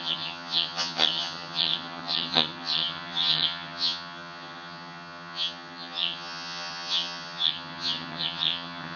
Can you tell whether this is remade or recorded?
remade